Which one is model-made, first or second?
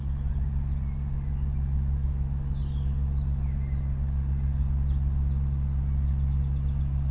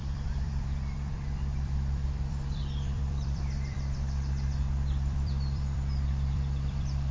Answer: second